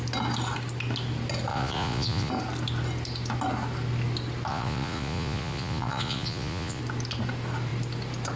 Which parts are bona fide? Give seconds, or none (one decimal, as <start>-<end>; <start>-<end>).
0.0-1.5; 2.3-4.5; 6.8-8.4